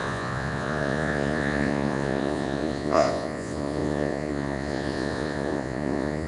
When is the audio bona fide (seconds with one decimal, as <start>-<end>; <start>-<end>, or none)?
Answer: none